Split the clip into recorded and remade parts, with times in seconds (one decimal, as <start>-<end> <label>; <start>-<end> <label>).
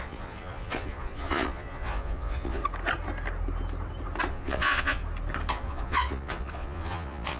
0.0-2.6 remade; 2.6-4.3 recorded; 4.3-5.0 remade; 5.0-5.5 recorded; 5.5-7.4 remade